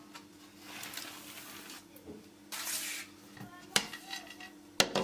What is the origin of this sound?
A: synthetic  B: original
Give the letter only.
B